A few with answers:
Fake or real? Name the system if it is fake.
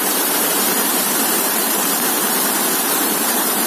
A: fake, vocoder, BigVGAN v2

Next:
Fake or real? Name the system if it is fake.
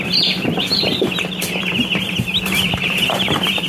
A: fake, vocoder, BigVGAN v2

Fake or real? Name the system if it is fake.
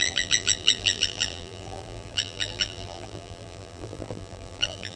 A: fake, vocoder, BigVGAN v2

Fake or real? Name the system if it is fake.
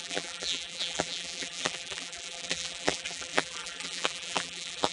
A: fake, vocoder, BigVGAN v2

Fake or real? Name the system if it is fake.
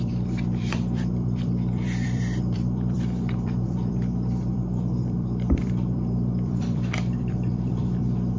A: fake, vocoder, BigVGAN v2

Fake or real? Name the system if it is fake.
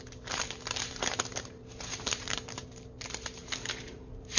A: fake, vocoder, BigVGAN v2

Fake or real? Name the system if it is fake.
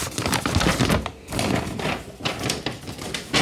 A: real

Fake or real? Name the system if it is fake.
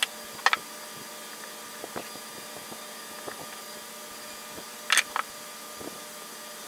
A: real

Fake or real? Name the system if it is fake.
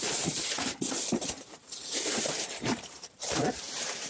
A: fake, vocoder, BigVGAN v2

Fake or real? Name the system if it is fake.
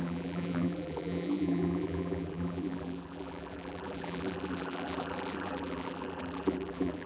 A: fake, vocoder, BigVGAN v2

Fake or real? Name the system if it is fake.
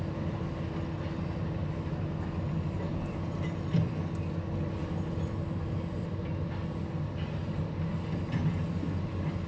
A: real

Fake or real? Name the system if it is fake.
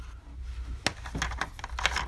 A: real